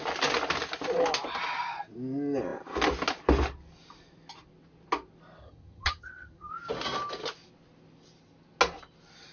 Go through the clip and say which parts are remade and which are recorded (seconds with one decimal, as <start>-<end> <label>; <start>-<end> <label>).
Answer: 0.0-5.4 recorded; 5.4-6.5 remade; 6.5-9.3 recorded